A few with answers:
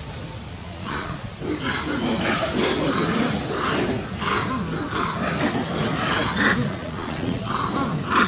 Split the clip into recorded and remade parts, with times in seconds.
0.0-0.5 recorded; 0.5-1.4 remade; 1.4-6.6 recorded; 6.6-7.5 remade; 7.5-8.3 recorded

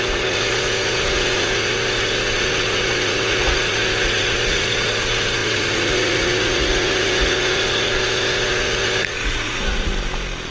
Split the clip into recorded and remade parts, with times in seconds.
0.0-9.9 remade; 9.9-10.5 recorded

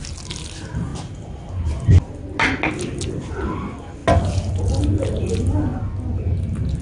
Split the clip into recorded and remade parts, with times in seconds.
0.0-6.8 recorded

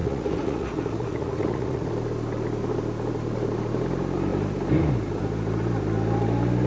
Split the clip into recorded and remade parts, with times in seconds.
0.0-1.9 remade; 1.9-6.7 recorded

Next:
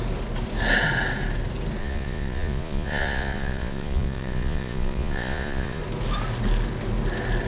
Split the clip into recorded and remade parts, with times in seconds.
0.0-1.8 recorded; 1.8-5.8 remade; 5.8-7.5 recorded

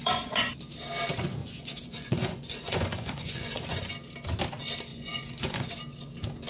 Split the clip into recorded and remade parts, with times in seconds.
0.0-0.5 remade; 0.5-1.4 recorded; 1.4-3.9 remade; 3.9-4.9 recorded; 4.9-5.7 remade; 5.7-6.5 recorded